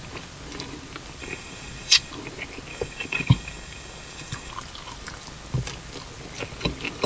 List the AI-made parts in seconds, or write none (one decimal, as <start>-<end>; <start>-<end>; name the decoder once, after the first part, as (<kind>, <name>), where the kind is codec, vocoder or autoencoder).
1.2-2.1 (codec, DAC); 2.7-4.5

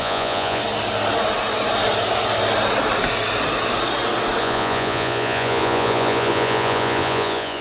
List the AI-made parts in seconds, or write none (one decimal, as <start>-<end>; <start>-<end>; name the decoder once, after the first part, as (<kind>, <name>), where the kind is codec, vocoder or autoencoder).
0.0-0.6 (vocoder, Vocos); 4.4-7.6